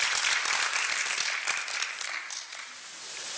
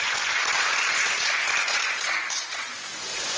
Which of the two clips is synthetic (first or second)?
second